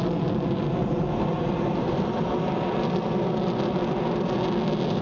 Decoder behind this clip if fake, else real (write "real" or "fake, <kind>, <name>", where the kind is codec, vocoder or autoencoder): real